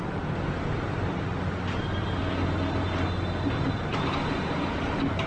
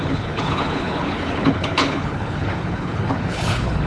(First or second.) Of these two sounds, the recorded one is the first